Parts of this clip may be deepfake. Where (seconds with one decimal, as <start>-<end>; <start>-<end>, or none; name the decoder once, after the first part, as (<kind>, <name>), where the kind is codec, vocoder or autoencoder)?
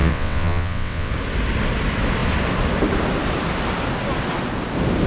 0.0-1.1 (vocoder, WaveNeXt)